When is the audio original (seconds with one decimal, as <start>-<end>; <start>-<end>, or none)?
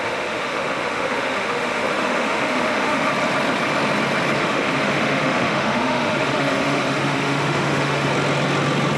3.1-4.4; 8.1-9.0